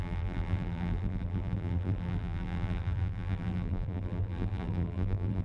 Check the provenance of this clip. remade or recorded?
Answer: remade